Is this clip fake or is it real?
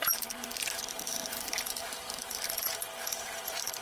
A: fake